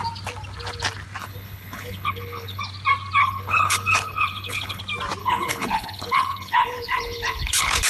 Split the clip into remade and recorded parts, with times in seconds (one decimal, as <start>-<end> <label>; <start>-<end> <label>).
0.0-1.2 recorded; 1.2-2.6 remade; 2.6-3.2 recorded; 3.2-4.8 remade; 4.8-5.2 recorded; 5.2-7.9 remade